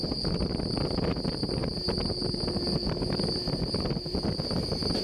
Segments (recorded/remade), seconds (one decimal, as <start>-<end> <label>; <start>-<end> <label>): 0.0-5.0 recorded